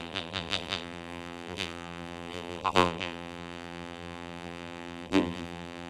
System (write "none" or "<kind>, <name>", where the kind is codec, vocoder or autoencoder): vocoder, BigVGAN v2